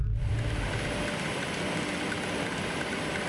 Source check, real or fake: fake